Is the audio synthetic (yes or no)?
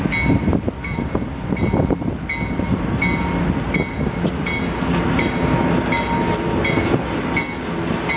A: no